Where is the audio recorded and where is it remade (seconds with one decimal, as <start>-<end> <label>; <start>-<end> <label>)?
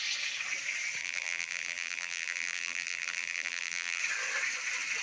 0.0-1.0 recorded; 1.0-4.0 remade; 4.0-5.0 recorded